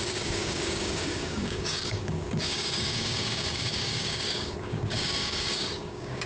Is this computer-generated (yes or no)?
yes